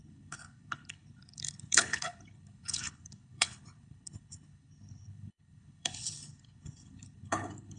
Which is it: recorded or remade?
remade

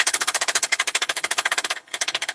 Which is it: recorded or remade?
remade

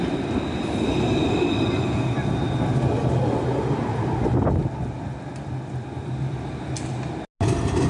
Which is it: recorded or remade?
recorded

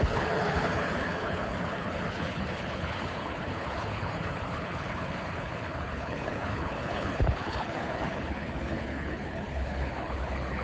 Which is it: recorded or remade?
remade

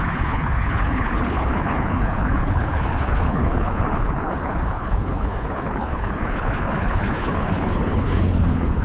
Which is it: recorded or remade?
remade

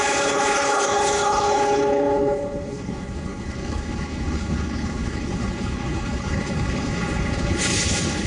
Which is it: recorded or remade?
remade